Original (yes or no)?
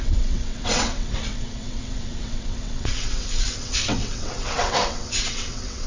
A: no